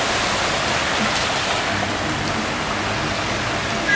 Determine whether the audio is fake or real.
real